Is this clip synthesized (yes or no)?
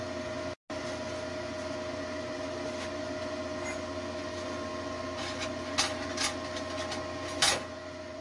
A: no